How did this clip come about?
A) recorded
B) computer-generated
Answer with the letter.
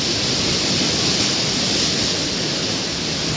A